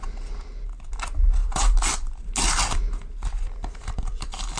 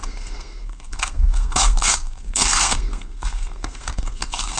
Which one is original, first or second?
first